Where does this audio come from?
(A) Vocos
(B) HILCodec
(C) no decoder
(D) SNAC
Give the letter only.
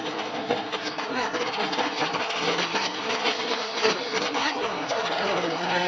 D